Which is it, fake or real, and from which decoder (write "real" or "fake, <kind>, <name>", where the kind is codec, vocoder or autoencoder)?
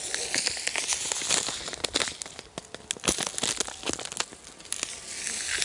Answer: real